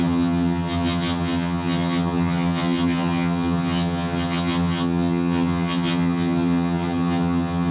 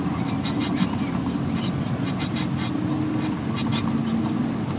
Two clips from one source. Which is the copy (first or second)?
first